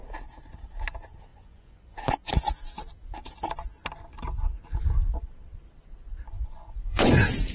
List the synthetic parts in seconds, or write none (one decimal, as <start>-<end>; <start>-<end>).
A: 1.3-2.3; 6.3-7.1